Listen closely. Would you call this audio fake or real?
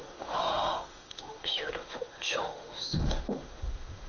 fake